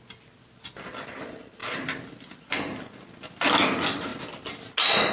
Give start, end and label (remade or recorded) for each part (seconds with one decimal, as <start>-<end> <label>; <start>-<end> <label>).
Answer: 0.0-5.1 recorded